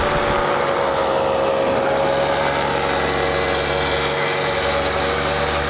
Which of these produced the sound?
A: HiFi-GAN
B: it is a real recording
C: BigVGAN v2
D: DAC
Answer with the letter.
B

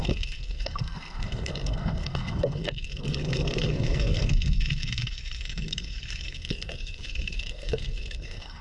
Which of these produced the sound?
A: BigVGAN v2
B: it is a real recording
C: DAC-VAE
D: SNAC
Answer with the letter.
D